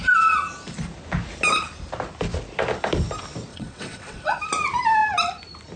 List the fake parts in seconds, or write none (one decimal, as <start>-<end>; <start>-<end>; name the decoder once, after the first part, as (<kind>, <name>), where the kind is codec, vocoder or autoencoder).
3.5-4.4 (vocoder, WaveNeXt)